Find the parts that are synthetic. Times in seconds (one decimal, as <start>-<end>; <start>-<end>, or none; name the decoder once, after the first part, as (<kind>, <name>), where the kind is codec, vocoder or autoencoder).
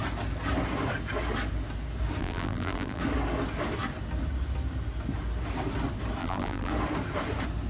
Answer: 2.2-3.0 (vocoder, BigVGAN v2); 6.2-6.7